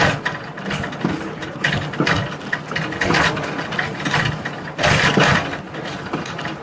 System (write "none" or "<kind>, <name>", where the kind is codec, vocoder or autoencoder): none